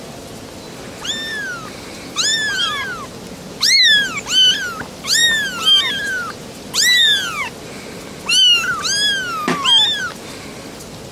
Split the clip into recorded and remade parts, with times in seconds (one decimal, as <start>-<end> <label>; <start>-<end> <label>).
0.0-11.1 recorded